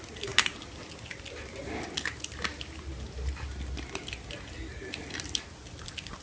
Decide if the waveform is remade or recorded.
recorded